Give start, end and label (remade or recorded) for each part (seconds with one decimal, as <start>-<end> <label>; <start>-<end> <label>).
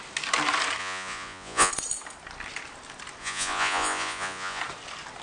0.0-0.8 recorded; 0.8-1.7 remade; 1.7-3.2 recorded; 3.2-4.6 remade; 4.6-5.2 recorded